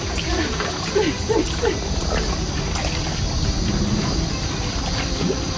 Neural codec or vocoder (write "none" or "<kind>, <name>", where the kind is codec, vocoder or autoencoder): none